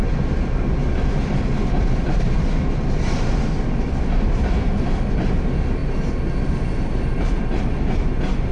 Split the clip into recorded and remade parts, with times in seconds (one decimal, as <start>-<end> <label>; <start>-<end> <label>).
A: 0.0-0.8 recorded; 0.8-5.3 remade; 5.3-8.5 recorded